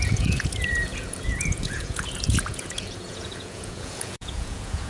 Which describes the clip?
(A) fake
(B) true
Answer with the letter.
A